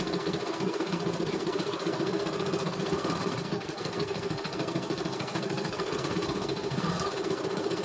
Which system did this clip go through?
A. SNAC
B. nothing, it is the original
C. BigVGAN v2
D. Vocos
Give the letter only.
A